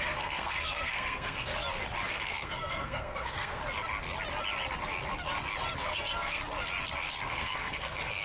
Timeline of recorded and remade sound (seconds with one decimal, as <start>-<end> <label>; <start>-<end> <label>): 0.0-1.5 remade; 1.5-2.1 recorded; 2.1-3.6 remade; 3.6-5.8 recorded; 5.8-6.4 remade; 6.4-7.3 recorded; 7.3-8.2 remade